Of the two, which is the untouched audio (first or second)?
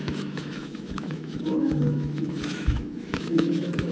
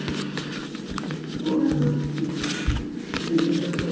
second